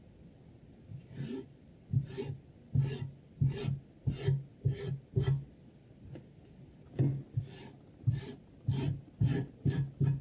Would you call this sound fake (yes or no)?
no